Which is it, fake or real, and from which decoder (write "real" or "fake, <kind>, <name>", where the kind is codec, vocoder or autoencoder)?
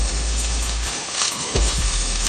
fake, autoencoder, DAC-VAE